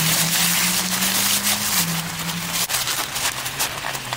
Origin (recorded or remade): recorded